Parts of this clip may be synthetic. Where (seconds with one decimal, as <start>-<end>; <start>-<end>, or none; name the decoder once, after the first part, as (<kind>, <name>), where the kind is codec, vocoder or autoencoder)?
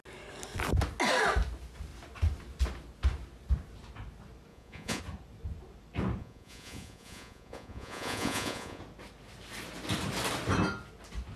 4.5-5.0 (vocoder, Vocos); 6.2-8.8